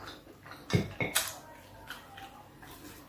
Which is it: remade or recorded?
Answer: recorded